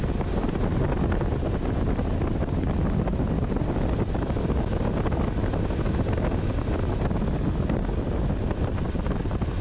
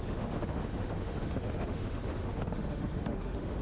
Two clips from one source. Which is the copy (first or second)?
second